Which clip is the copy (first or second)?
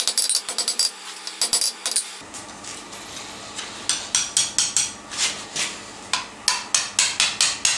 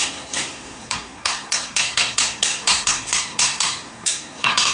second